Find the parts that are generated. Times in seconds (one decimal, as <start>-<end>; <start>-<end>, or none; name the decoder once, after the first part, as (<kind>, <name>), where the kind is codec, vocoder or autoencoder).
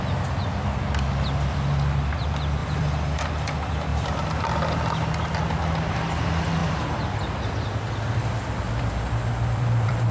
2.6-3.3 (vocoder, BigVGAN v2); 6.6-10.1